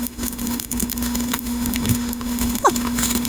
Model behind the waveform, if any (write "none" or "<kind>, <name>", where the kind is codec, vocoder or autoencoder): autoencoder, DAC-VAE